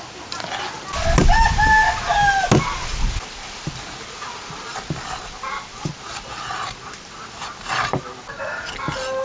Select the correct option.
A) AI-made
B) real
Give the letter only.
B